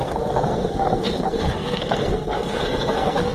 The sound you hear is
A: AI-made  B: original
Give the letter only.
A